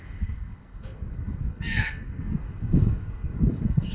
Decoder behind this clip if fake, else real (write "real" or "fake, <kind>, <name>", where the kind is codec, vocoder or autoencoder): fake, codec, SNAC